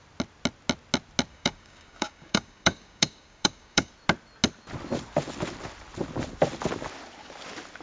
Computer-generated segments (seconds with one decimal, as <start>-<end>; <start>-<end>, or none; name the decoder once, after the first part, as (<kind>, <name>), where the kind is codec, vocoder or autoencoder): 1.3-3.9 (codec, DAC)